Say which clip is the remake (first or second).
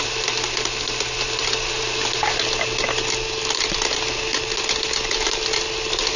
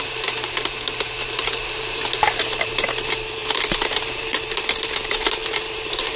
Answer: second